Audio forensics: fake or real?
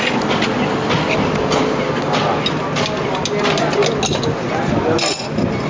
real